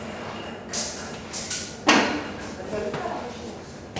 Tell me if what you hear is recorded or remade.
recorded